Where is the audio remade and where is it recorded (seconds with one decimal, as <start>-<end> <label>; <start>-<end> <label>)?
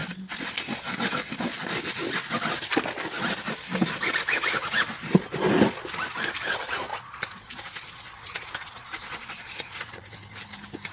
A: 0.0-6.9 recorded; 6.9-10.0 remade; 10.0-10.9 recorded